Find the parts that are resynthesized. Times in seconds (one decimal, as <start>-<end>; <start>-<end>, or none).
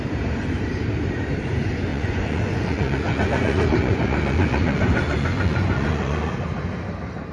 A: 1.9-6.3